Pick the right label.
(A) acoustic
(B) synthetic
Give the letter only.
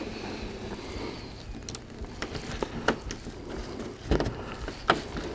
A